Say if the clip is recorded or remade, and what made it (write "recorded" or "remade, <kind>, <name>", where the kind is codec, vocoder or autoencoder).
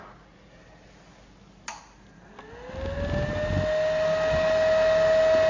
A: recorded